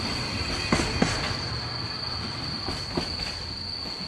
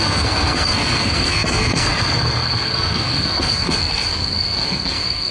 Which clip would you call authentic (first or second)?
first